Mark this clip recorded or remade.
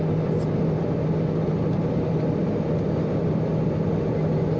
recorded